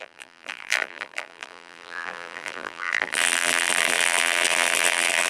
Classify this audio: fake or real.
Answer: fake